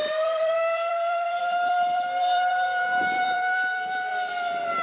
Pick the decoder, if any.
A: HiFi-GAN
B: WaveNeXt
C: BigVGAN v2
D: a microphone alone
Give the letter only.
C